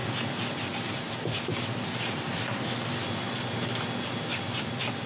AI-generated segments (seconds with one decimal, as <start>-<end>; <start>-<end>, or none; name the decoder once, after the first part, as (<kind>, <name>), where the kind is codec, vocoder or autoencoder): 0.0-2.7 (vocoder, BigVGAN v2); 4.3-5.1